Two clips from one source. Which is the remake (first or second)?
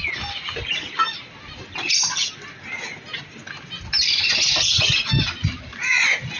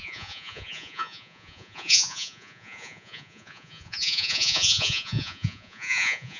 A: second